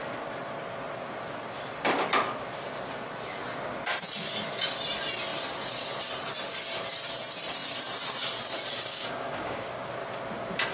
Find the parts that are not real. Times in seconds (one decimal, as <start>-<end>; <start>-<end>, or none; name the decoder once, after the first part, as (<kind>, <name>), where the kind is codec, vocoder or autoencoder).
8.9-9.9 (codec, DAC)